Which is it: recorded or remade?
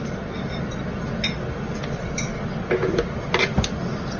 recorded